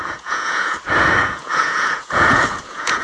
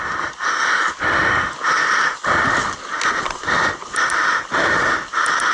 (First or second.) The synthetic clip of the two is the first